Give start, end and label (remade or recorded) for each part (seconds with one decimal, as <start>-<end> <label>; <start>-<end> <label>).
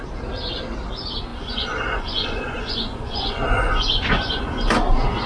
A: 0.0-1.3 recorded; 1.3-4.5 remade; 4.5-5.3 recorded